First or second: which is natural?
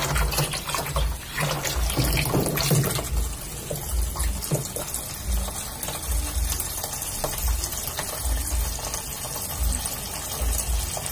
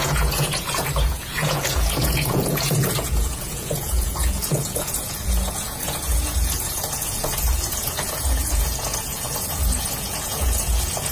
first